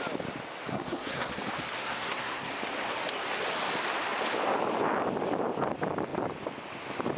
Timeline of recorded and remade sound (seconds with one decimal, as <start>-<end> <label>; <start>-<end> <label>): 0.0-0.7 recorded; 0.7-1.3 remade; 1.3-1.8 recorded; 1.8-2.5 remade; 2.5-7.2 recorded